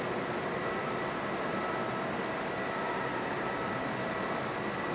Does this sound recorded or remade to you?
recorded